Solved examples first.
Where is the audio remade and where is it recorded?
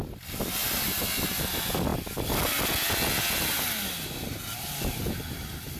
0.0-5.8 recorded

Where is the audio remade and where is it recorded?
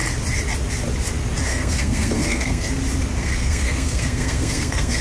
0.0-1.5 recorded; 1.5-2.7 remade; 2.7-3.2 recorded; 3.2-5.0 remade